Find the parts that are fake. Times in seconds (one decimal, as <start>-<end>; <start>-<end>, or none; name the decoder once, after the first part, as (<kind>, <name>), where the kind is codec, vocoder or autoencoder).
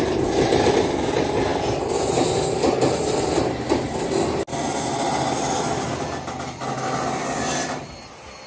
1.5-4.0 (vocoder, BigVGAN v2)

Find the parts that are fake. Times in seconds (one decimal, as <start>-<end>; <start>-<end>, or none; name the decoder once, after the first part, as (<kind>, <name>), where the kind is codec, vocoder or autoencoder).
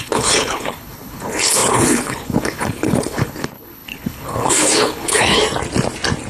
0.0-5.4 (codec, HILCodec)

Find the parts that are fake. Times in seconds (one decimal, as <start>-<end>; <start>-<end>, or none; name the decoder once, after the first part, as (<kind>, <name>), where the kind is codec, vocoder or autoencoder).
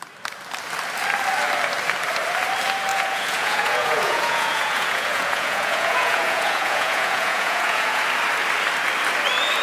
2.9-8.0 (vocoder, Vocos)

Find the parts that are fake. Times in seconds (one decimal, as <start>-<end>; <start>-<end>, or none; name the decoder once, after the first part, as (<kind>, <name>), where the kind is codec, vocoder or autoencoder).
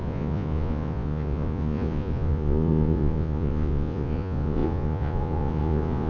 0.0-6.1 (vocoder, Vocos)